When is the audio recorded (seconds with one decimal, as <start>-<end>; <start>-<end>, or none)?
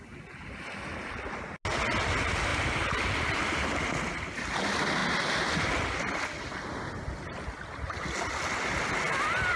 0.0-9.6